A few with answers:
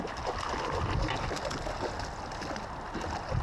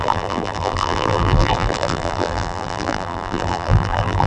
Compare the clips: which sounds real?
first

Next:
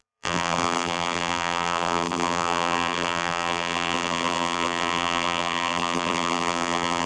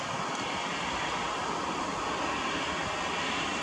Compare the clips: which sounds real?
second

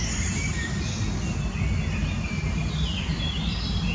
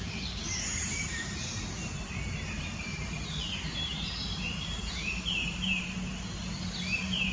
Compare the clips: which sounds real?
first